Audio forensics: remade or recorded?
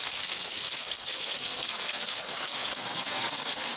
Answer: remade